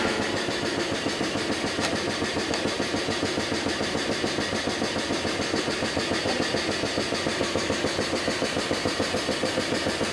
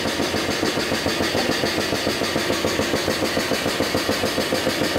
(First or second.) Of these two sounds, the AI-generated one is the first